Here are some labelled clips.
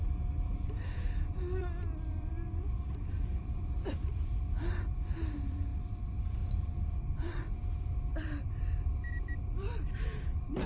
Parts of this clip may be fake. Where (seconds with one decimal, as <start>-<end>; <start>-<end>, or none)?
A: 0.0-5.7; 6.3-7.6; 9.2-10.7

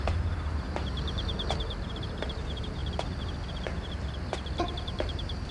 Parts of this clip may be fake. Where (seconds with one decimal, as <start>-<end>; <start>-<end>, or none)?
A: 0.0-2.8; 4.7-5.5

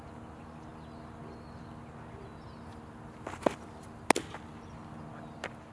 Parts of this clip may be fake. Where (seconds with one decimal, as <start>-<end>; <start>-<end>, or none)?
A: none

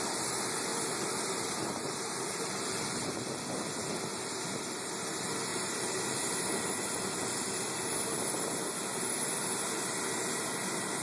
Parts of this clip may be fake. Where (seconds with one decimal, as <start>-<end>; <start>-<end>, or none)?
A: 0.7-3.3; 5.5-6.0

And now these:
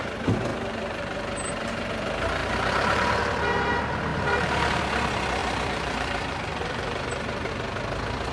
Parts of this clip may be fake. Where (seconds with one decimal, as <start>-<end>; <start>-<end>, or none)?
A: 0.5-1.9; 2.4-3.2; 4.1-4.8; 5.4-7.5

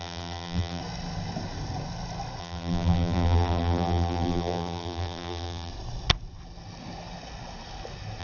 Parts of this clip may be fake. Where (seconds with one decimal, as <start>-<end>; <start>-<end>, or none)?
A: 0.0-0.8; 2.4-5.7

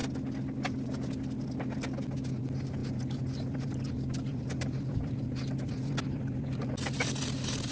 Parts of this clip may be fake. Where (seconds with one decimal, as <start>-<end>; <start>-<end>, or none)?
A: 2.8-7.7